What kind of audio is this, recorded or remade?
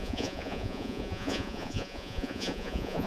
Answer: remade